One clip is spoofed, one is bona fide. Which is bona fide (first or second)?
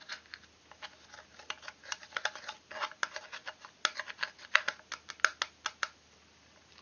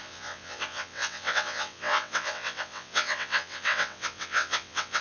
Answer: first